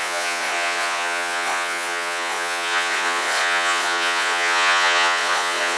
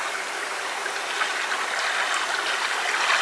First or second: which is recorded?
second